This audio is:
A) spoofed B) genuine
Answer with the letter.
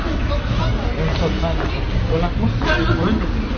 B